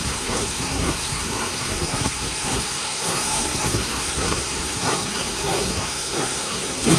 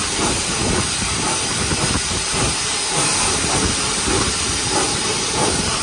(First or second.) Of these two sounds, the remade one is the first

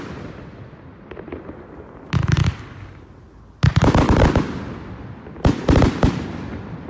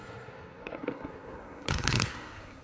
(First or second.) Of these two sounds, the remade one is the second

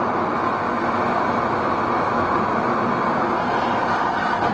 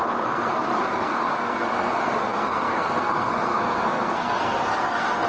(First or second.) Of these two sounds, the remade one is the second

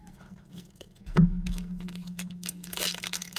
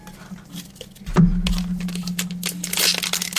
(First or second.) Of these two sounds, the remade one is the first